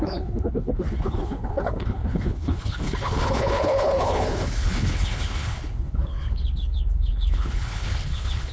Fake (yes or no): yes